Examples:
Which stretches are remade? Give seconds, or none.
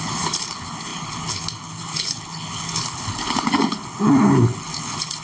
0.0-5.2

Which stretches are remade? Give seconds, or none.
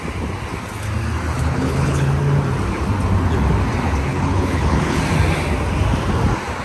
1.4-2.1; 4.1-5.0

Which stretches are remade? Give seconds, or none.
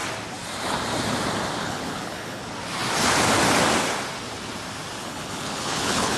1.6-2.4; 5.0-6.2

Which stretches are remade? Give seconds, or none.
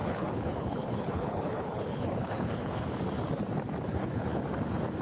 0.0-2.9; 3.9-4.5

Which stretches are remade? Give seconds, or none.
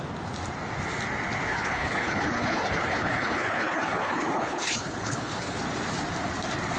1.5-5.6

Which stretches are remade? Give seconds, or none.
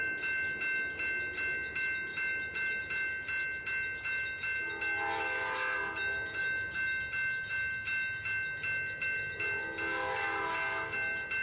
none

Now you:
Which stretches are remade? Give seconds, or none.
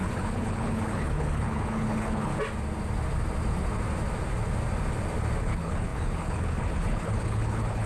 0.0-2.3; 5.4-7.9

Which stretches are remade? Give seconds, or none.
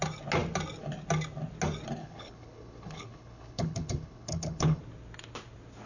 2.0-4.8